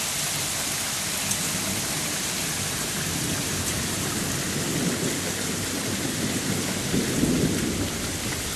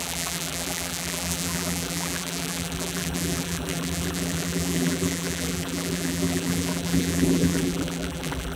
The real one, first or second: first